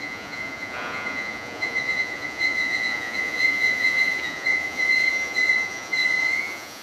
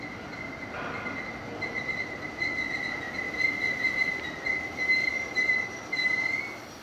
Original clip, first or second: second